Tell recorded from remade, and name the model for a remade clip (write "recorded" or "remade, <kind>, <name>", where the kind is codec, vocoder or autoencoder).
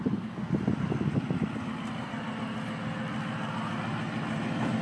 recorded